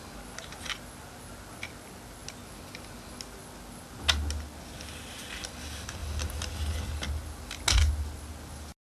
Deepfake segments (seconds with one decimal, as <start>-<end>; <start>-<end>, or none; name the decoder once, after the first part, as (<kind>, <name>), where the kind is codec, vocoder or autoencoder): none